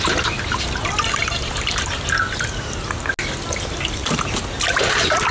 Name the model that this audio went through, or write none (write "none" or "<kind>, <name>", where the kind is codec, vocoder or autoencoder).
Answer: none